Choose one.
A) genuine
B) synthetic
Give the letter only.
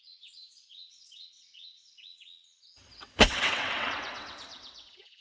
B